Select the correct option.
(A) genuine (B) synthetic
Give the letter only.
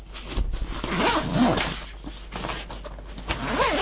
A